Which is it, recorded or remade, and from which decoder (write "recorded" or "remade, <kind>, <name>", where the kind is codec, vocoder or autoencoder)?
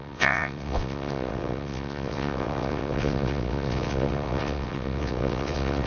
remade, vocoder, WaveNeXt